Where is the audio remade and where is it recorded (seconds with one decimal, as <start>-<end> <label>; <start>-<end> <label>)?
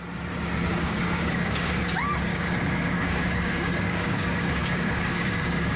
0.0-0.8 recorded; 0.8-1.8 remade; 1.8-2.3 recorded; 2.3-5.8 remade